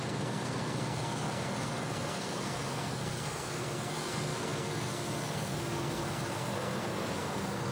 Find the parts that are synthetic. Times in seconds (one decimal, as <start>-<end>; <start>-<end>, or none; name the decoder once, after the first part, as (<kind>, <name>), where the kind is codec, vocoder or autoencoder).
0.0-7.7 (codec, SNAC)